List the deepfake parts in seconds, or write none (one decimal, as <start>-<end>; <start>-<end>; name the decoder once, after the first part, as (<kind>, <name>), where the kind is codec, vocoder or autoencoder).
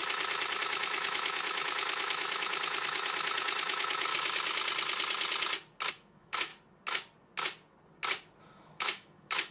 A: 0.6-4.1 (autoencoder, DAC-VAE); 5.9-6.5; 8.4-9.5